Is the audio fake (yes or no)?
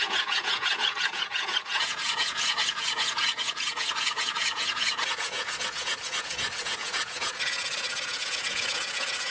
yes